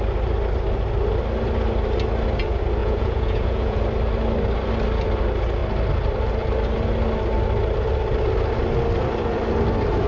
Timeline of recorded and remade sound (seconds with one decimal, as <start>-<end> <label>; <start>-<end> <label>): 0.0-2.8 recorded; 2.8-3.8 remade; 3.8-10.1 recorded

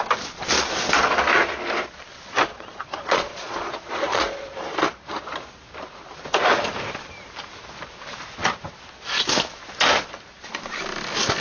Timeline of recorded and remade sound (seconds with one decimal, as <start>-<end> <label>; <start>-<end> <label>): 0.0-2.5 recorded; 2.5-4.6 remade; 4.6-11.4 recorded

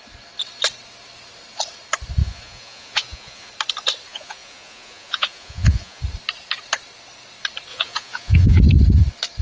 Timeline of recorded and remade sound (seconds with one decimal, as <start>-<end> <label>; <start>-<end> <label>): 0.0-2.2 recorded; 2.2-3.5 remade; 3.5-4.1 recorded; 4.1-6.0 remade; 6.0-7.7 recorded; 7.7-8.6 remade; 8.6-9.4 recorded

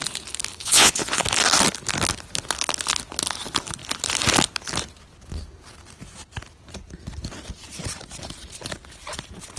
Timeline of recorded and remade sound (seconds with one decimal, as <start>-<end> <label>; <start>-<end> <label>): 0.0-0.6 recorded; 0.6-1.2 remade; 1.2-9.6 recorded

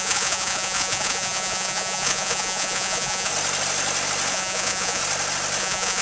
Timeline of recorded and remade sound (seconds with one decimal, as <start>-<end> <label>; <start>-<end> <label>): 0.0-3.3 remade; 3.3-4.3 recorded; 4.3-5.0 remade; 5.0-5.6 recorded; 5.6-6.0 remade